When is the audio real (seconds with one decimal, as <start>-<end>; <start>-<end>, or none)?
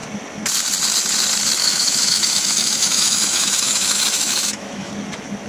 0.0-1.6; 4.9-5.5